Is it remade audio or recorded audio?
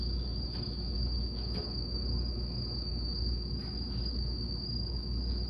remade